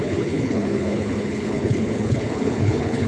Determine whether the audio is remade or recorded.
remade